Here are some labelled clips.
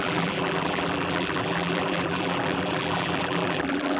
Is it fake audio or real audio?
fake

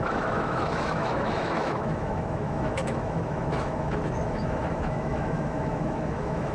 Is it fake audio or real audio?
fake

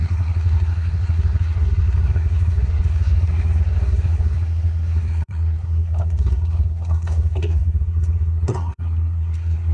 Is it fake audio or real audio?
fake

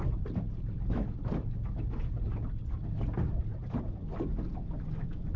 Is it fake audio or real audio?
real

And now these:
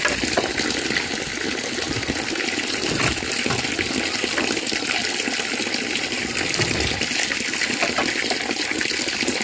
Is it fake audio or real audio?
real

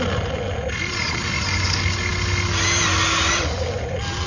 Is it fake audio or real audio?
real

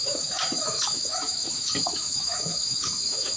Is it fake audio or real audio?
fake